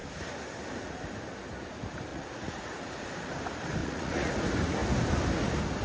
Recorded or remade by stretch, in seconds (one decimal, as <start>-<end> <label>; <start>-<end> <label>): 0.0-2.1 recorded; 2.1-3.1 remade; 3.1-3.8 recorded; 3.8-4.3 remade; 4.3-5.8 recorded